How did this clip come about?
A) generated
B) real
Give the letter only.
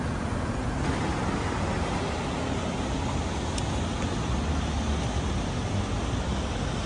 B